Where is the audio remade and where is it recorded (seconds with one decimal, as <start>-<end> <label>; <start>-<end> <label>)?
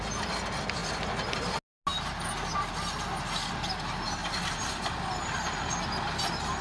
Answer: 0.0-0.8 recorded; 0.8-1.5 remade; 1.5-4.2 recorded; 4.2-5.3 remade; 5.3-6.6 recorded